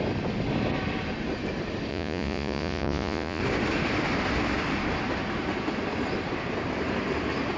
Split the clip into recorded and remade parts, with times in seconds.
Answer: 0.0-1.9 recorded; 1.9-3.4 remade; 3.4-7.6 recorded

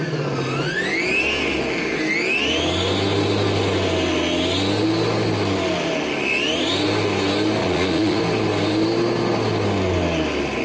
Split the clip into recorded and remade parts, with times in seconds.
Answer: 0.0-7.6 recorded; 7.6-8.2 remade; 8.2-10.6 recorded